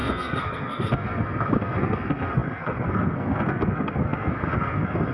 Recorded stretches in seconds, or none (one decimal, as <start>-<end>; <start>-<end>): none